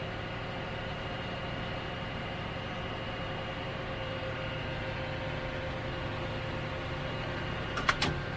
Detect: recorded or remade recorded